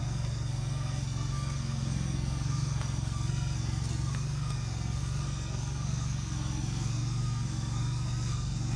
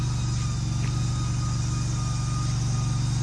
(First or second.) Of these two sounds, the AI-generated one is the first